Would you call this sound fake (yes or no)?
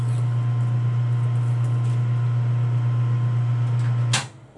no